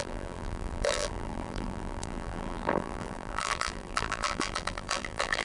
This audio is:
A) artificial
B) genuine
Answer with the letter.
A